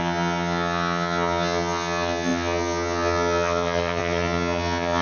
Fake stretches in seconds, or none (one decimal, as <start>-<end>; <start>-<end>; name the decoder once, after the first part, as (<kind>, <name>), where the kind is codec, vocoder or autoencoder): 0.0-5.0 (vocoder, HiFi-GAN)